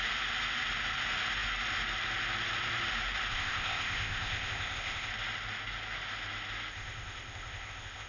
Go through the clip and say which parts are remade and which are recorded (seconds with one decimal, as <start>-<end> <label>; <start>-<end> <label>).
0.0-3.3 recorded; 3.3-5.1 remade; 5.1-6.7 recorded; 6.7-8.1 remade